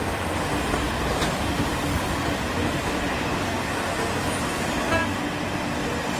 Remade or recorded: recorded